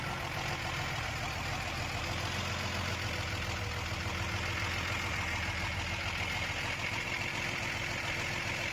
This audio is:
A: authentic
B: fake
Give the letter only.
A